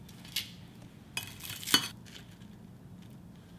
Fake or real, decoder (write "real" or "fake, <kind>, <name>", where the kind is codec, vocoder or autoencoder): real